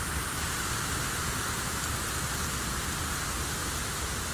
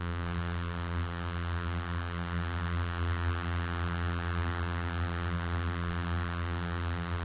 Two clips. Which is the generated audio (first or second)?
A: second